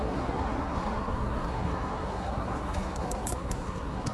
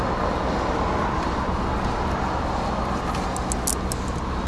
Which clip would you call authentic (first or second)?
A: second